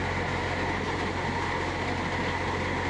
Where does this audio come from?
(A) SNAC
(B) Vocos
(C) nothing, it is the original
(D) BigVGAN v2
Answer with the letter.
C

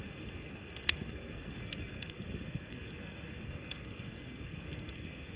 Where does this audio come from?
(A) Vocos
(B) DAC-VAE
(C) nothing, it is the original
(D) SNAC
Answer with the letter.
D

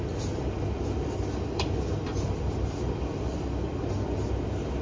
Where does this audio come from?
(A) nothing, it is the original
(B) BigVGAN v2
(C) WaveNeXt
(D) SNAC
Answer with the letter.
A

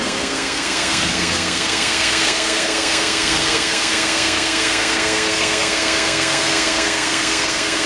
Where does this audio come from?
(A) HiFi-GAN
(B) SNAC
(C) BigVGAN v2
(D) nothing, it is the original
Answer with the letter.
B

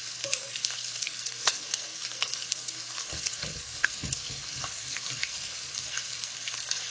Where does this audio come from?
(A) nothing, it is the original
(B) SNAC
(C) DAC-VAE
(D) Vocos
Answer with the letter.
B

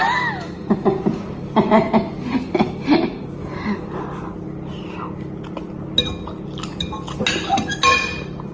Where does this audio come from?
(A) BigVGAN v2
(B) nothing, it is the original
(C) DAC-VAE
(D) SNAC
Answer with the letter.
B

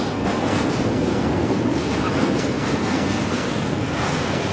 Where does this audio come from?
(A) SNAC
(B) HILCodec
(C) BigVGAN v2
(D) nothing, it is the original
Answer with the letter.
A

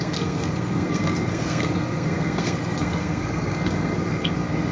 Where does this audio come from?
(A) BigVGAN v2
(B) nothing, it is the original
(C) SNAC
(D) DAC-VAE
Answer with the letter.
C